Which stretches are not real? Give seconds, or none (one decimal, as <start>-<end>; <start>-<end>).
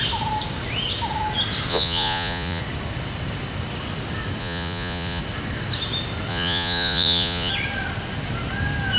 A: 1.7-2.6; 4.4-5.2; 6.3-7.5